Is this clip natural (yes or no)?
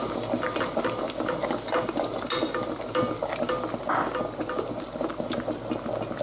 yes